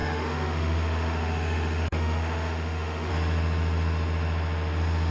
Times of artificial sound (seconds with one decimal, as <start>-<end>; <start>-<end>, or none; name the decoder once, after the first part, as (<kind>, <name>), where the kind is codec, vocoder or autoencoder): 0.0-3.1 (autoencoder, DAC-VAE)